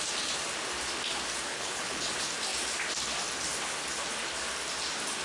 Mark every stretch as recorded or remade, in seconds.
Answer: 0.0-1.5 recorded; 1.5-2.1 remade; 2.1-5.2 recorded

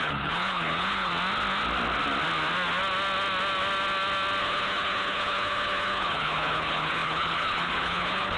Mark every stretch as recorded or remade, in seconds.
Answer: 0.0-1.1 remade; 1.1-4.4 recorded; 4.4-8.4 remade

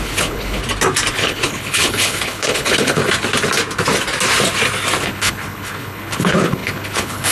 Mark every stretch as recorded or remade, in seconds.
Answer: 0.0-0.6 remade; 0.6-1.1 recorded; 1.1-3.0 remade; 3.0-5.0 recorded; 5.0-7.3 remade